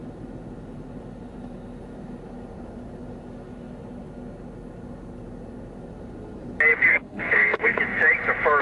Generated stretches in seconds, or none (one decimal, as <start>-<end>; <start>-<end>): 6.9-7.8